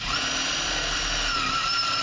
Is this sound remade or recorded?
remade